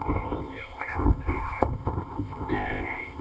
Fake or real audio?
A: fake